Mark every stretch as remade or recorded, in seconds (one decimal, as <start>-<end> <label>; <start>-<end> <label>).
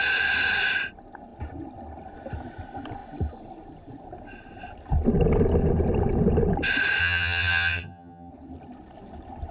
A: 0.0-7.0 recorded; 7.0-8.3 remade; 8.3-9.5 recorded